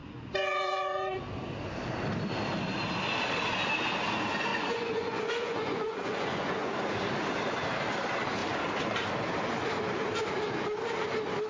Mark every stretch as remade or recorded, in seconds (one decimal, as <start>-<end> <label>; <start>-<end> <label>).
0.0-1.2 remade; 1.2-4.5 recorded; 4.5-6.7 remade; 6.7-11.5 recorded